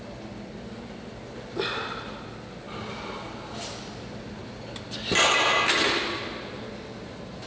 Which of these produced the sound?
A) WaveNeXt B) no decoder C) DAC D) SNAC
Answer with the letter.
B